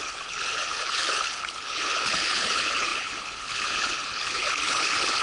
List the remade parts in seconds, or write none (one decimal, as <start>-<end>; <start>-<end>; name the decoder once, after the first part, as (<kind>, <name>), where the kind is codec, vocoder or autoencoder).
0.0-5.2 (codec, HILCodec)